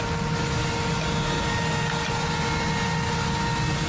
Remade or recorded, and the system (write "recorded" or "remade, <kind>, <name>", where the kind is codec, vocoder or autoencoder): recorded